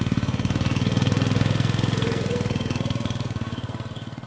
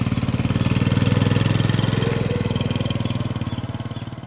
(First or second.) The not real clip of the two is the first